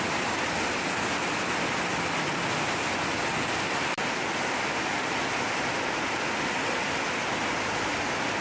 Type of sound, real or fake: real